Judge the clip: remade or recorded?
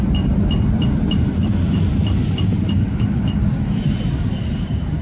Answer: recorded